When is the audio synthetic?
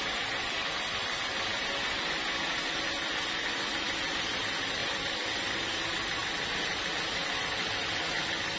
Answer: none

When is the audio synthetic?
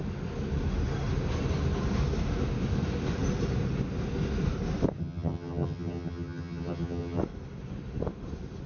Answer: 5.0-7.2 (vocoder, HiFi-GAN)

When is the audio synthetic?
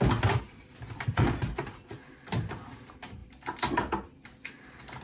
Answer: none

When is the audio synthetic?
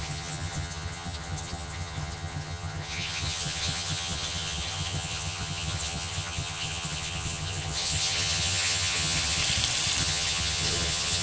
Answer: 0.0-9.4 (vocoder, HiFi-GAN); 10.0-11.2